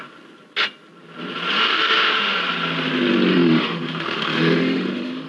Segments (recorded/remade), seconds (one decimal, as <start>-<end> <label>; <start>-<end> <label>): 0.0-1.6 recorded; 1.6-2.4 remade; 2.4-3.3 recorded; 3.3-5.3 remade